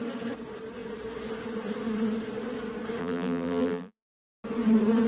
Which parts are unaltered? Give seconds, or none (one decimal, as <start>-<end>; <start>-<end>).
0.0-3.0; 4.2-5.1